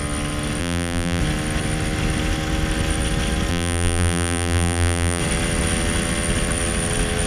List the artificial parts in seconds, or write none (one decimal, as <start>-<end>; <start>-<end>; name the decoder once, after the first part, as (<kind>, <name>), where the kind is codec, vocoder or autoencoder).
0.6-1.2 (vocoder, BigVGAN v2); 3.5-5.2